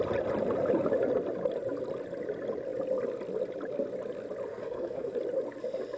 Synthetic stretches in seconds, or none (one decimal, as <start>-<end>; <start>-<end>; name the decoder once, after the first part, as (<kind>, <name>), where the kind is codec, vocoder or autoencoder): 4.5-5.1 (codec, SNAC)